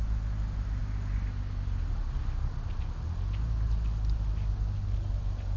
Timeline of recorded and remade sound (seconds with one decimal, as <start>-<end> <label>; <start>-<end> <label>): 0.0-5.6 recorded